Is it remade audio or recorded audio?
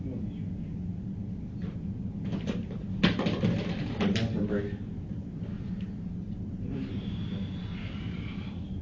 recorded